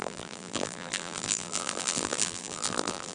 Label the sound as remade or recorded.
remade